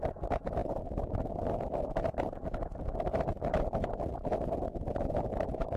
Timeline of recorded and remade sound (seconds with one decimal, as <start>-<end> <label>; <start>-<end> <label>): 0.0-5.8 recorded